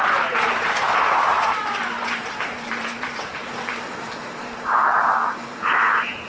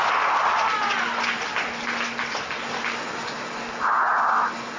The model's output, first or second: first